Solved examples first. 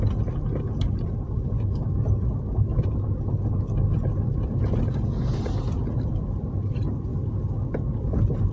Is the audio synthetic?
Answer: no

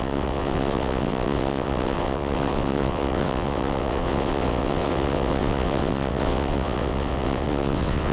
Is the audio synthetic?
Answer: yes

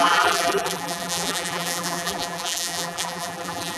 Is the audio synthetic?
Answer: yes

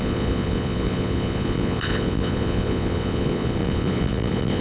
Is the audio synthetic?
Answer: yes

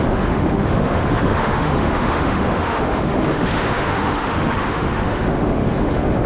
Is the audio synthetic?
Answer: yes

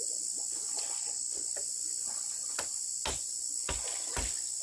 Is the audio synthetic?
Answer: no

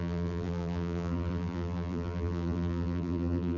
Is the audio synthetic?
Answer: yes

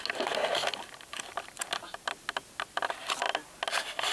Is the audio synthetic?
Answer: no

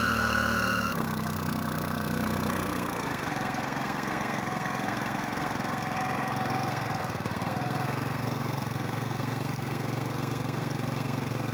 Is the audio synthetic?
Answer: yes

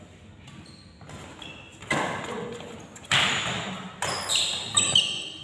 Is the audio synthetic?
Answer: no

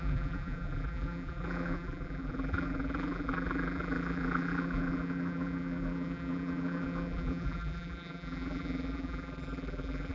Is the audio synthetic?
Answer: yes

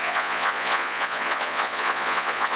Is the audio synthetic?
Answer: yes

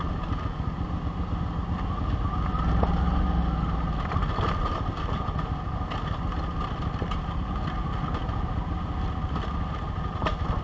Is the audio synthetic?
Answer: no